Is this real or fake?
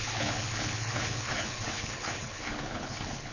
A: fake